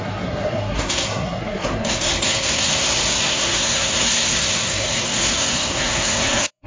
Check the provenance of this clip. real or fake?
fake